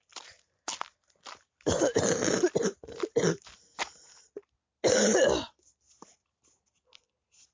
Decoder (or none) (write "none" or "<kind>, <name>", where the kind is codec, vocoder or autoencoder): none